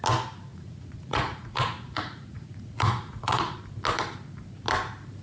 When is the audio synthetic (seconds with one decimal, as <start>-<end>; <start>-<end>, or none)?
0.5-3.6